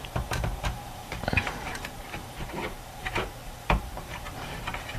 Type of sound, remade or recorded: remade